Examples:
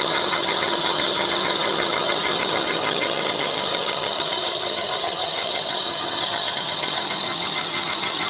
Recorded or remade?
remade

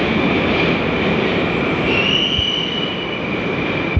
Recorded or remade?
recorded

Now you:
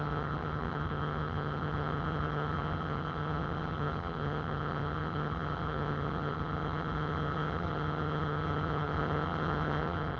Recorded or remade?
remade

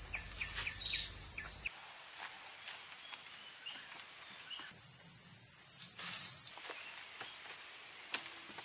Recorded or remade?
recorded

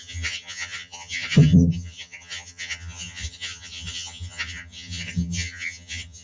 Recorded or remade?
remade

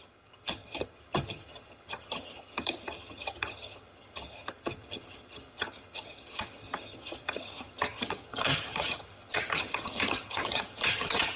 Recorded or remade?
remade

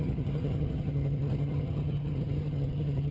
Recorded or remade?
remade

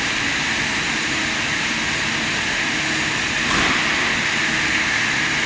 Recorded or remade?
recorded